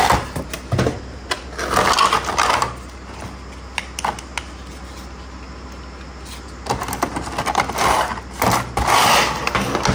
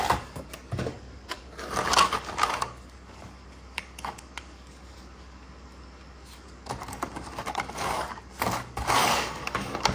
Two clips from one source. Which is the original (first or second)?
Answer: first